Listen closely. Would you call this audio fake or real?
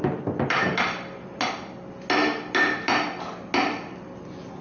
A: real